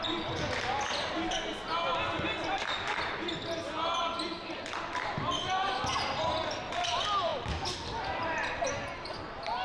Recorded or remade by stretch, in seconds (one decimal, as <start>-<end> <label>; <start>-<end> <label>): 0.0-9.6 recorded